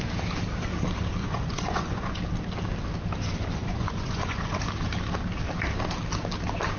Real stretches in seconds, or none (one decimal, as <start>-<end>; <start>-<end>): 0.0-1.2; 2.2-3.6; 4.6-6.8